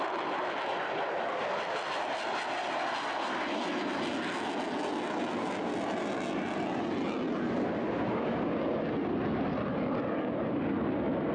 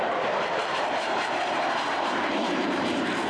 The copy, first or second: second